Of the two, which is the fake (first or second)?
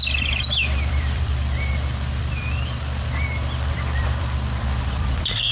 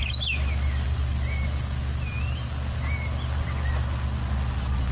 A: first